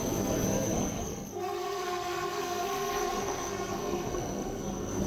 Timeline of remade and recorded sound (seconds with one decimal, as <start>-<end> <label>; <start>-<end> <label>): 0.0-5.1 remade